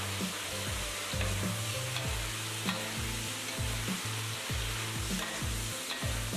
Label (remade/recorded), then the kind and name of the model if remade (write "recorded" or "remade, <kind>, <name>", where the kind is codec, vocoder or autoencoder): recorded